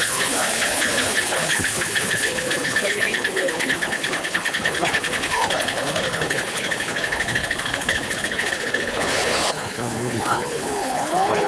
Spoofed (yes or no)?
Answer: yes